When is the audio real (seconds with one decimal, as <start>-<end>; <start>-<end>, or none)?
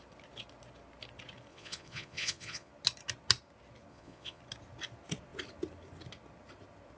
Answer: 0.0-1.5; 2.7-3.9; 4.4-7.0